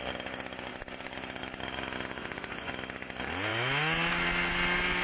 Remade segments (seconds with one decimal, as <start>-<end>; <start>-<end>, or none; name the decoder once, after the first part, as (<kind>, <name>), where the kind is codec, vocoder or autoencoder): 2.2-2.7 (vocoder, Vocos)